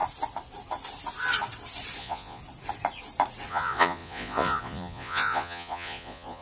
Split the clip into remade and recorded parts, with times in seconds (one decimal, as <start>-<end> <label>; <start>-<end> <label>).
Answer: 0.0-2.0 recorded; 2.0-2.4 remade; 2.4-3.5 recorded; 3.5-6.4 remade